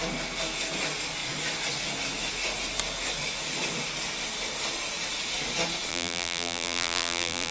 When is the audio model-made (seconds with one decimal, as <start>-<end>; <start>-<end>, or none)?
5.9-7.5